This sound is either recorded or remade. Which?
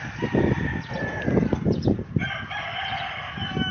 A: recorded